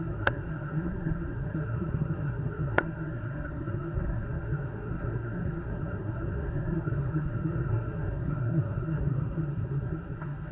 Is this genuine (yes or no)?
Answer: no